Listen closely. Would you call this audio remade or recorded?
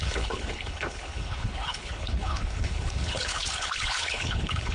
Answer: remade